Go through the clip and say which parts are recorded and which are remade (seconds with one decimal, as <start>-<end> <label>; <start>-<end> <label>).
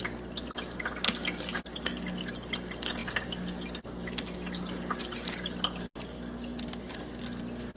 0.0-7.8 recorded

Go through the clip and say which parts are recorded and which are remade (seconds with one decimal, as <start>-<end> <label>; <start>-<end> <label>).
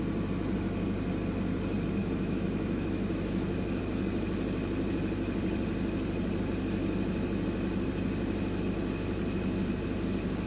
0.0-2.0 recorded; 2.0-3.8 remade; 3.8-10.5 recorded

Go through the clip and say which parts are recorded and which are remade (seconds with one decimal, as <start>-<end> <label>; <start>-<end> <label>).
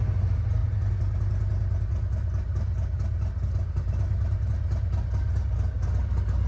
0.0-6.5 recorded